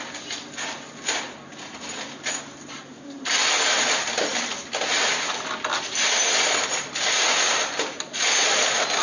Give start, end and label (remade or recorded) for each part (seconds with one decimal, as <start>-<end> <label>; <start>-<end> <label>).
0.0-9.0 recorded